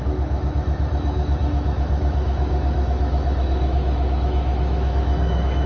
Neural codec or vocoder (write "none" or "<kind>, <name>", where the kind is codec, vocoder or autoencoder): autoencoder, DAC-VAE